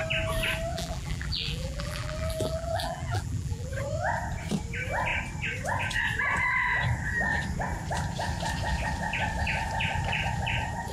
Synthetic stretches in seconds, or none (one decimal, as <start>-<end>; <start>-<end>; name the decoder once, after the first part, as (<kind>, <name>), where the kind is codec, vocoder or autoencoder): 0.7-3.7 (vocoder, BigVGAN v2)